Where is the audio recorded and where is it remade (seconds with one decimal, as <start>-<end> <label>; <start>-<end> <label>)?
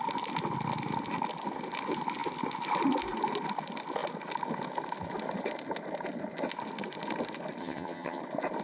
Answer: 0.0-7.6 recorded; 7.6-8.2 remade; 8.2-8.6 recorded